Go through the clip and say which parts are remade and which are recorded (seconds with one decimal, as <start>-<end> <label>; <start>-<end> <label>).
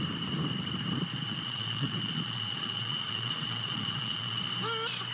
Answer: 0.0-1.3 recorded; 1.3-4.4 remade; 4.4-5.1 recorded